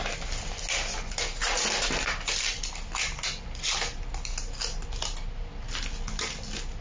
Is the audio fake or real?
real